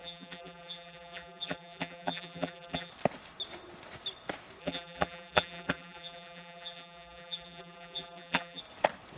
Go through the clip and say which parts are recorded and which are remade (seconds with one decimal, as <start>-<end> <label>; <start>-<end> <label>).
0.0-2.9 remade; 2.9-4.6 recorded; 4.6-8.6 remade; 8.6-9.2 recorded